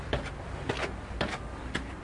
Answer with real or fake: real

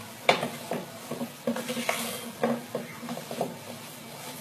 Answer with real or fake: real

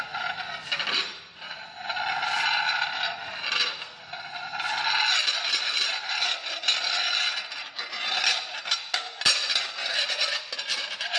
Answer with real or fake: real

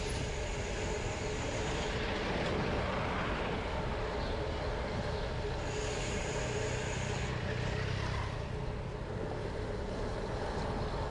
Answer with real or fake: real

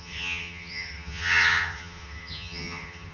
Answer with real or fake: fake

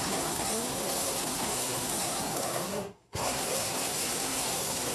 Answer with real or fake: fake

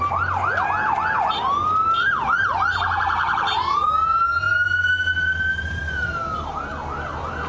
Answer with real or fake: real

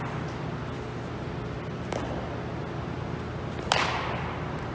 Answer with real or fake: real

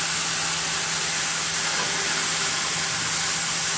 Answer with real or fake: real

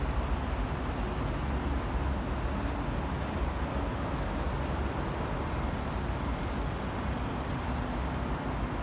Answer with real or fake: real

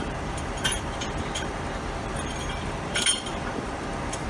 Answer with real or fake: fake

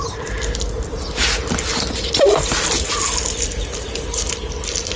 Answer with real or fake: real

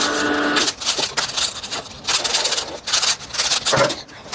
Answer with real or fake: real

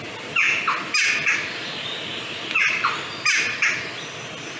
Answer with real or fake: real